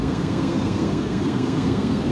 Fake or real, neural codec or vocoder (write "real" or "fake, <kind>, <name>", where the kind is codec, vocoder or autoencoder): fake, codec, SNAC